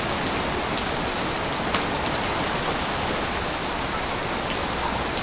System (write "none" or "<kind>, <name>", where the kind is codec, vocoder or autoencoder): none